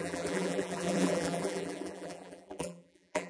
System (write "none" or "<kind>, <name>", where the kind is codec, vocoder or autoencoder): vocoder, BigVGAN v2